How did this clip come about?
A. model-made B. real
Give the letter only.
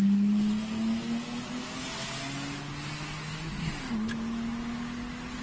B